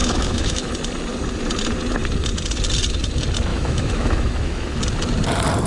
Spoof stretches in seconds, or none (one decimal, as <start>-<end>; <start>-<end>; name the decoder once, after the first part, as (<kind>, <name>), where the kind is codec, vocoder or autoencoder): 0.0-0.7 (autoencoder, DAC-VAE); 3.5-4.8